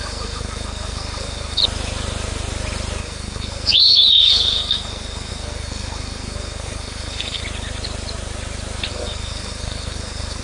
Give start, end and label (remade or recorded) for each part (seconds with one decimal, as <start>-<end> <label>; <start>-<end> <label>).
0.0-1.6 remade; 1.6-3.0 recorded; 3.0-7.4 remade; 7.4-8.9 recorded; 8.9-10.4 remade